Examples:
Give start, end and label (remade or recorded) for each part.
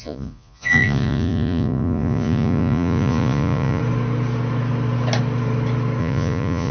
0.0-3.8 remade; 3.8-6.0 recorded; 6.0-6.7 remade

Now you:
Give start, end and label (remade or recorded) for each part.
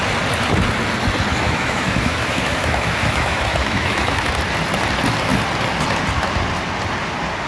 0.0-1.3 recorded; 1.3-4.3 remade; 4.3-7.5 recorded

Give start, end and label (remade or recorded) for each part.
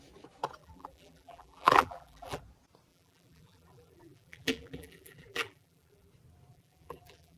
0.0-0.6 recorded; 0.6-2.4 remade; 2.4-2.9 recorded; 2.9-6.1 remade; 6.1-6.5 recorded; 6.5-7.4 remade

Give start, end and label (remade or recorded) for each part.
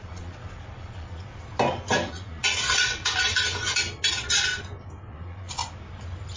0.0-1.3 remade; 1.3-2.1 recorded; 2.1-3.0 remade; 3.0-4.1 recorded; 4.1-4.5 remade; 4.5-5.1 recorded; 5.1-5.6 remade; 5.6-6.4 recorded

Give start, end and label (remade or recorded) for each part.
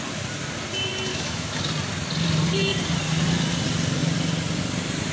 0.0-1.1 recorded; 1.1-1.7 remade; 1.7-5.1 recorded